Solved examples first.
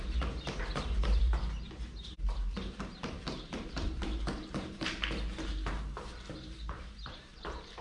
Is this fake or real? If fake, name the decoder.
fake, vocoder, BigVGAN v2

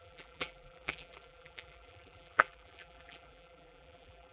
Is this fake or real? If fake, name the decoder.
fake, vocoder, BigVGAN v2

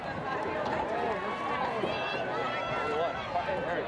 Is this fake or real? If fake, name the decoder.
real